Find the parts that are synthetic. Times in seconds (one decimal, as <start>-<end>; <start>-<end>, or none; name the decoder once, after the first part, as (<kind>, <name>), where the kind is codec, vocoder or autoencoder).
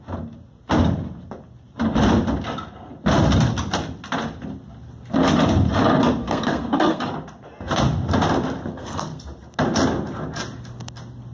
6.2-7.0 (codec, SNAC); 8.7-9.2